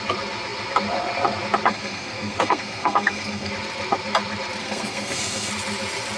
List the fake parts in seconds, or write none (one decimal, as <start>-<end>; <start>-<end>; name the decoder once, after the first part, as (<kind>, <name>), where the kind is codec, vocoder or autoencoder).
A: 1.7-3.5 (codec, SNAC); 4.6-5.5